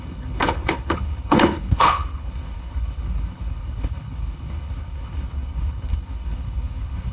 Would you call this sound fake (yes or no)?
yes